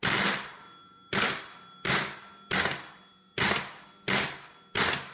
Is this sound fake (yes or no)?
no